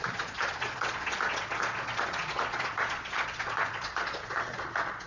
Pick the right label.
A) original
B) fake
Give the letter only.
B